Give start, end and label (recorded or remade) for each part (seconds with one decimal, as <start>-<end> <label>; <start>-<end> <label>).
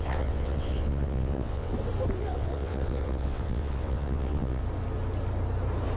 0.0-1.7 remade; 1.7-2.2 recorded; 2.2-4.6 remade; 4.6-6.0 recorded